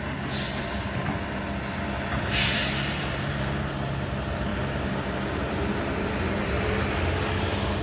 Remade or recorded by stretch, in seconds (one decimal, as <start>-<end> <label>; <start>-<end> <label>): 0.0-2.5 recorded; 2.5-3.7 remade; 3.7-4.5 recorded; 4.5-6.1 remade; 6.1-7.8 recorded